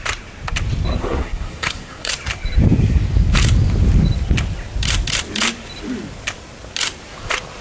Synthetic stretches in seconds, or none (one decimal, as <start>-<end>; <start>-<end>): 1.0-2.1